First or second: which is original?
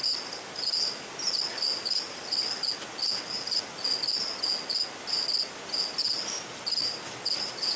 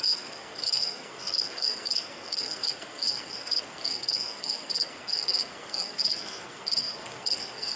first